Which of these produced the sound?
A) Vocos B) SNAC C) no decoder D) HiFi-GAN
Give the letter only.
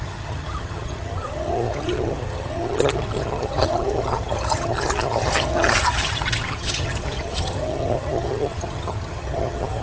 D